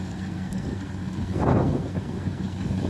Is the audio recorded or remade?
remade